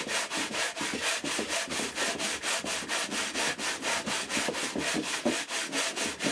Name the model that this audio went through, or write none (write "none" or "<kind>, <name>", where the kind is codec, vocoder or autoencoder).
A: vocoder, BigVGAN v2